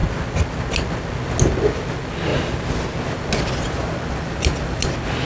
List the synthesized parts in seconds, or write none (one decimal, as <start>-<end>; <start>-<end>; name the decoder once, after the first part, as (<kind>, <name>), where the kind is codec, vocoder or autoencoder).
none